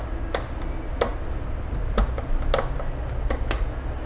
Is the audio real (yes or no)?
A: yes